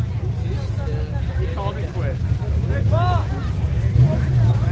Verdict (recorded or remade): recorded